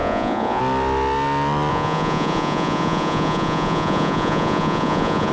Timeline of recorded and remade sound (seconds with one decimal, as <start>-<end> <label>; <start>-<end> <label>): 0.0-0.6 remade; 0.6-1.7 recorded; 1.7-5.3 remade